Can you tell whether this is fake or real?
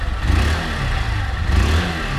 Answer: real